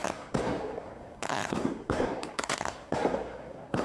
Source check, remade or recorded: remade